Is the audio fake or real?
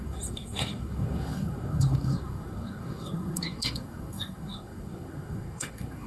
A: fake